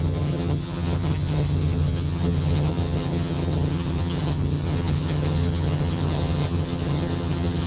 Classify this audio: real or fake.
fake